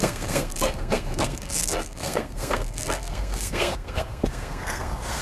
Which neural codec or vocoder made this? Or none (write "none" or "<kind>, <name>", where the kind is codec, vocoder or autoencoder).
codec, SNAC